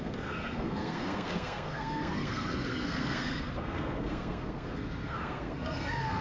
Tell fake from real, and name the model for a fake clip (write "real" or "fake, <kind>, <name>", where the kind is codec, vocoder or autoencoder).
fake, codec, SNAC